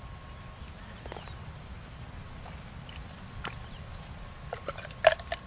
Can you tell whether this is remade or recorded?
recorded